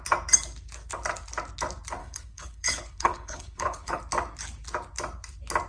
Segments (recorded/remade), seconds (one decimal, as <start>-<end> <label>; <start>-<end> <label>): 0.0-2.0 recorded; 2.0-4.0 remade; 4.0-5.7 recorded

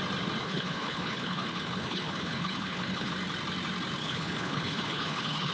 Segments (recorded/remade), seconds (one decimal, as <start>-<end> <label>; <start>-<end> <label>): 0.0-0.4 recorded; 0.4-3.1 remade; 3.1-4.0 recorded; 4.0-5.5 remade

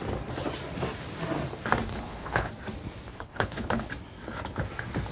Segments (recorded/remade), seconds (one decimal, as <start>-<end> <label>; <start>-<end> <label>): 0.0-1.9 recorded; 1.9-2.5 remade; 2.5-3.1 recorded; 3.1-3.9 remade; 3.9-5.1 recorded

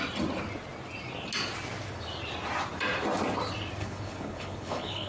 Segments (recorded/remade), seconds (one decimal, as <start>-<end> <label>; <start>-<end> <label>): 0.0-3.8 recorded; 3.8-5.1 remade

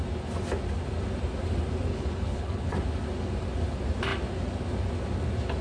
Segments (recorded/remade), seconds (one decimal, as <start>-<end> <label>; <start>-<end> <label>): 0.0-1.9 recorded; 1.9-2.7 remade; 2.7-5.6 recorded

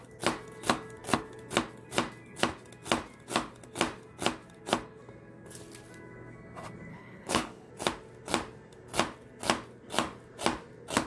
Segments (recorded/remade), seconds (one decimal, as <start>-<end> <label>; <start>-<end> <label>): 0.0-6.9 recorded; 6.9-7.7 remade; 7.7-11.1 recorded

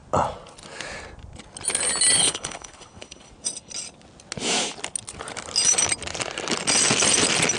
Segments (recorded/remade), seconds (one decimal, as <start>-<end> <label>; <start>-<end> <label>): 0.0-2.2 recorded; 2.2-3.3 remade; 3.3-7.6 recorded

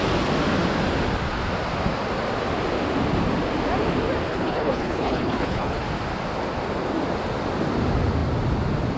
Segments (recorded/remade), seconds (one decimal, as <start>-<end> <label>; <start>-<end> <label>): 0.0-4.3 recorded; 4.3-5.8 remade; 5.8-9.0 recorded